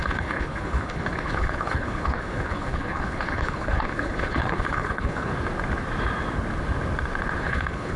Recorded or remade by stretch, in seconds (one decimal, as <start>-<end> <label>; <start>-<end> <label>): 0.0-5.3 remade; 5.3-7.4 recorded; 7.4-8.0 remade